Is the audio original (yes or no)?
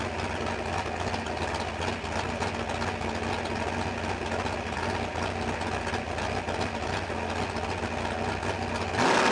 yes